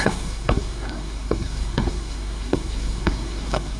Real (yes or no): no